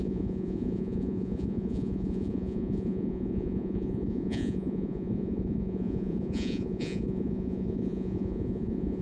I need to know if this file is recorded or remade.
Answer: remade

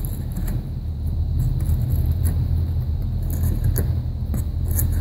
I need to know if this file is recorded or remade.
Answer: recorded